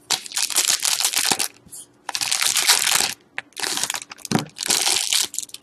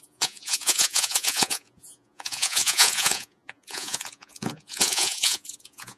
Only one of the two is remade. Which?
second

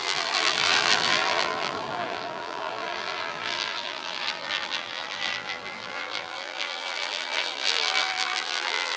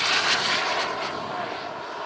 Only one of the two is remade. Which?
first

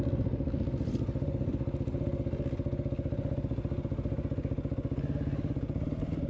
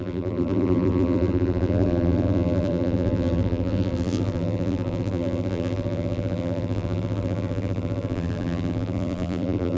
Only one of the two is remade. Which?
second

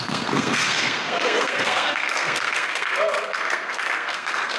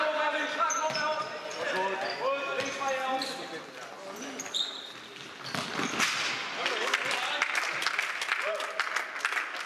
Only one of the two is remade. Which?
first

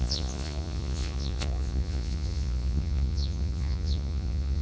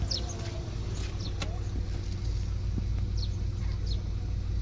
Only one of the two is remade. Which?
first